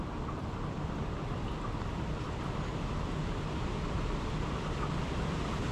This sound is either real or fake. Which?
real